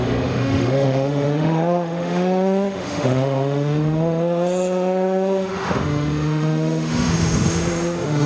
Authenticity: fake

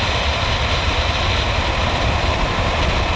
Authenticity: real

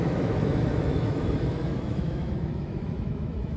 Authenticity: fake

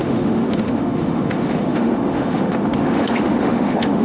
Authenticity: fake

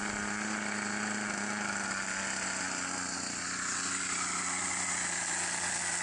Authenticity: real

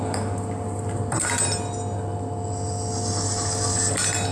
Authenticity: real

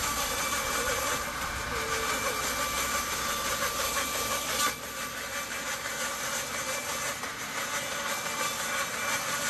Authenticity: real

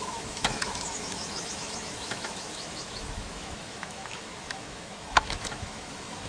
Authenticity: fake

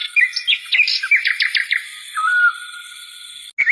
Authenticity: real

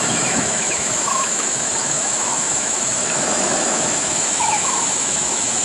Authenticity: fake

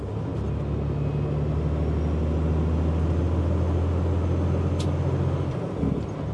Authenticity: real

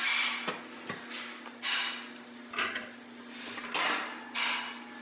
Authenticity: real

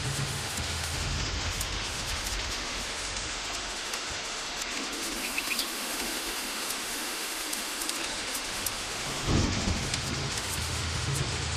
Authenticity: fake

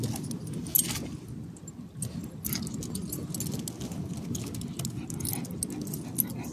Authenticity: real